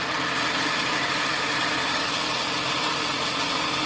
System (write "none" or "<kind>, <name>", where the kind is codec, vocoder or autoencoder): none